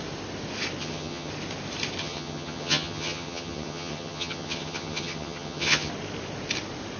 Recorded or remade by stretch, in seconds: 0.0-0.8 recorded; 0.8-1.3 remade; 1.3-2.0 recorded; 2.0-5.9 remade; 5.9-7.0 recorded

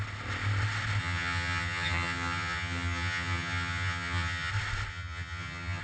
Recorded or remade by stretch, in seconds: 0.0-1.0 recorded; 1.0-4.5 remade; 4.5-4.9 recorded; 4.9-5.8 remade

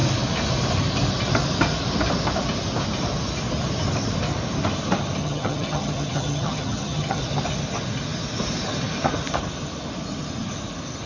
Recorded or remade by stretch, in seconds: 0.0-5.2 recorded; 5.2-7.2 remade; 7.2-11.1 recorded

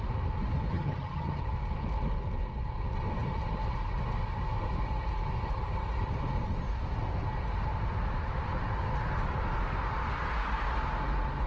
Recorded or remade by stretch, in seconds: 0.0-0.7 recorded; 0.7-1.4 remade; 1.4-11.5 recorded

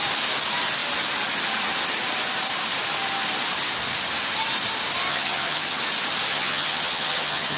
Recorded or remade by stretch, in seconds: 0.0-5.1 recorded; 5.1-5.8 remade; 5.8-6.3 recorded; 6.3-7.6 remade

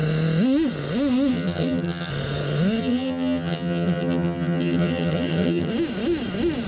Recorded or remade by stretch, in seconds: 0.0-1.3 recorded; 1.3-2.1 remade; 2.1-2.8 recorded; 2.8-5.7 remade; 5.7-6.7 recorded

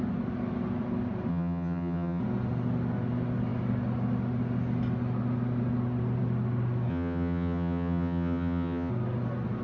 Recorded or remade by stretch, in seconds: 0.0-1.3 recorded; 1.3-2.2 remade; 2.2-6.9 recorded; 6.9-8.9 remade; 8.9-9.6 recorded